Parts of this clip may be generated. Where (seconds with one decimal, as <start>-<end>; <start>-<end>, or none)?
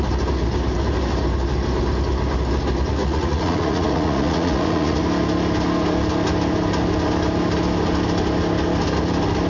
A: 3.0-5.0